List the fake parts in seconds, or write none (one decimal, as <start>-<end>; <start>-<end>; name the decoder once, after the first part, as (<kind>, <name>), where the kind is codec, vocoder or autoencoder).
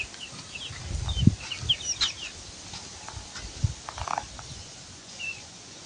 4.3-5.9 (vocoder, Vocos)